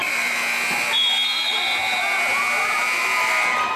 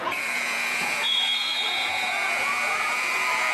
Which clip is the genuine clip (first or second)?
first